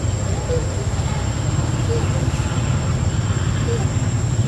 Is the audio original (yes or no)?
yes